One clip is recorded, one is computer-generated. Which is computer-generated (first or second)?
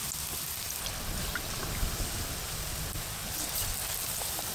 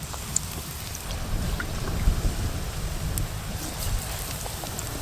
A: second